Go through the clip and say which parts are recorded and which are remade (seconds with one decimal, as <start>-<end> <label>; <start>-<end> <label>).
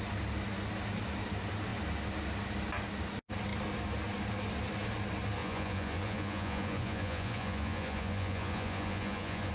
0.0-5.4 recorded; 5.4-9.5 remade